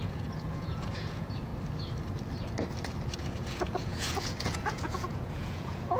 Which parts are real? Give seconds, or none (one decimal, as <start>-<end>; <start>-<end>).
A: 1.5-3.2